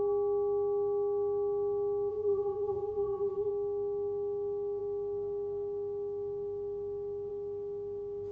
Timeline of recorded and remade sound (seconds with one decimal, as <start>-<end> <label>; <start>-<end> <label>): 0.0-2.1 recorded; 2.1-3.5 remade; 3.5-8.3 recorded